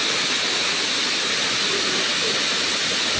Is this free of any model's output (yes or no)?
yes